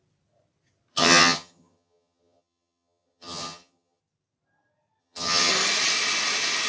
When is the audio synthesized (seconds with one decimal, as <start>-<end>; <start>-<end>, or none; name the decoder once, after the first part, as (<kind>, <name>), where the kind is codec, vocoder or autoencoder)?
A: 0.9-4.0 (vocoder, HiFi-GAN); 5.0-5.5